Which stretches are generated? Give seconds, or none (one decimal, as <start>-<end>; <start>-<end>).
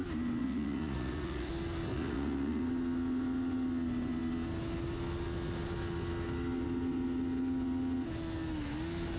0.4-1.5; 1.9-2.6